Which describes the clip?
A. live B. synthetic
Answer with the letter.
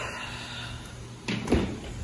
A